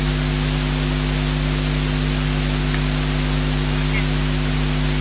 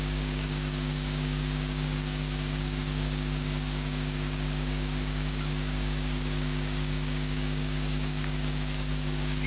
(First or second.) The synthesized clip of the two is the second